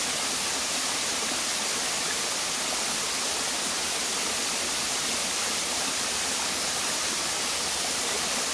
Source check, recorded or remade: recorded